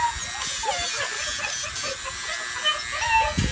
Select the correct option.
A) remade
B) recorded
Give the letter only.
B